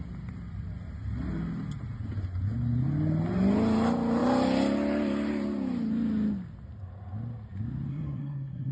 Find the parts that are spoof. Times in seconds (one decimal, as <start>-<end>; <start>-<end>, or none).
7.9-8.7